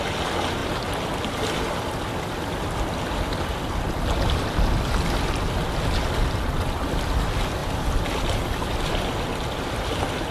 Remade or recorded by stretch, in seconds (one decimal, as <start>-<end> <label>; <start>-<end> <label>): 0.0-10.3 recorded